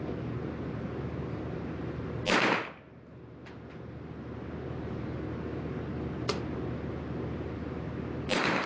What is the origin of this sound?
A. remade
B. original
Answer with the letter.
B